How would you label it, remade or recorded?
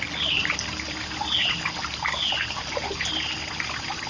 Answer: recorded